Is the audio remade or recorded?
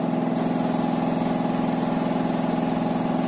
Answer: recorded